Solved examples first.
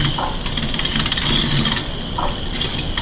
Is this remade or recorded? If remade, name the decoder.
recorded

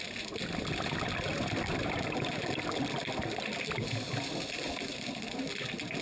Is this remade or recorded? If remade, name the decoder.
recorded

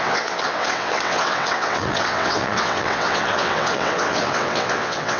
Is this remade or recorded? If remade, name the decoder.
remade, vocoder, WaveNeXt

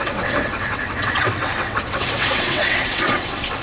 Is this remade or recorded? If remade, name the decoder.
remade, vocoder, WaveNeXt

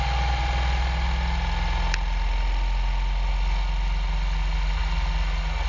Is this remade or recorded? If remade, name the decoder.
recorded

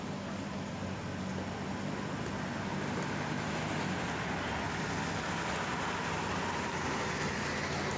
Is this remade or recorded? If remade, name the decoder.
recorded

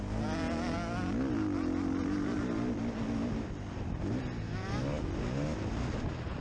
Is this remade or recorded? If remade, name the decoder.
recorded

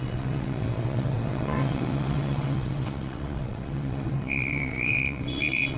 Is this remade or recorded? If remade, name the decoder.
remade, vocoder, WaveNeXt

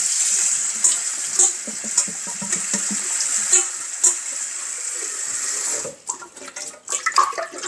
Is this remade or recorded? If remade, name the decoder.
recorded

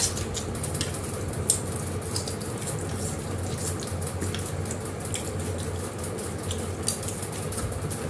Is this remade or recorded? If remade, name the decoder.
recorded